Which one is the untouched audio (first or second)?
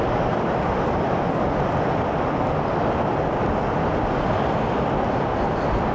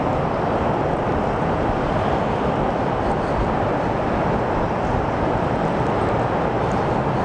first